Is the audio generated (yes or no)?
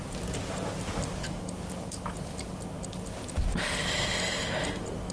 no